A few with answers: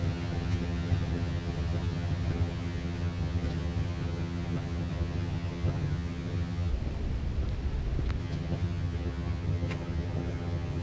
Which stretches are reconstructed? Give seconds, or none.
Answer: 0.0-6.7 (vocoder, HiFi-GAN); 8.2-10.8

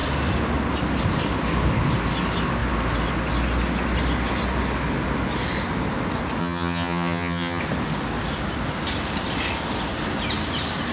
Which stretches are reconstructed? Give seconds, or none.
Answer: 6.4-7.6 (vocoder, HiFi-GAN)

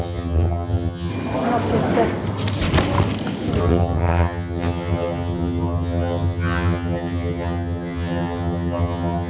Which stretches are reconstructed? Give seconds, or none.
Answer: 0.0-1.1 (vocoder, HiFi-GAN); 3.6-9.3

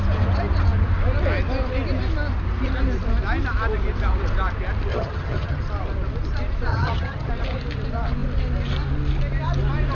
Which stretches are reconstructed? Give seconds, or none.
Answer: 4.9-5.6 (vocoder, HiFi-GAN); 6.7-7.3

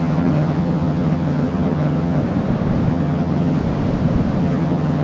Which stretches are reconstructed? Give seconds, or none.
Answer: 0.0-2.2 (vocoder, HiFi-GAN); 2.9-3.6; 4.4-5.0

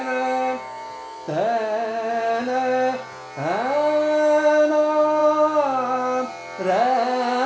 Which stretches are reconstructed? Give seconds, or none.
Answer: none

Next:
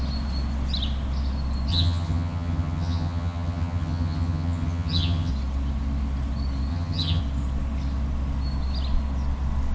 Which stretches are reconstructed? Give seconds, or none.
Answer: 1.7-5.3 (vocoder, HiFi-GAN); 6.7-7.2

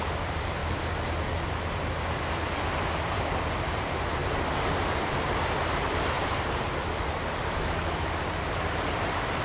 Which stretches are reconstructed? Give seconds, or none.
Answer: none